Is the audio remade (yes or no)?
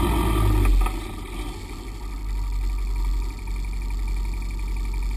no